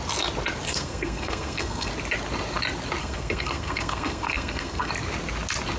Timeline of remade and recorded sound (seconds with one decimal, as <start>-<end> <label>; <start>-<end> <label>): 0.0-0.7 recorded; 0.7-1.9 remade; 1.9-3.0 recorded; 3.0-4.9 remade; 4.9-5.8 recorded